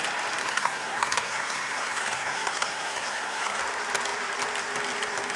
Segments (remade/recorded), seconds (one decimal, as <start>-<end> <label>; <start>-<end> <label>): 0.0-0.4 recorded; 0.4-3.6 remade; 3.6-5.4 recorded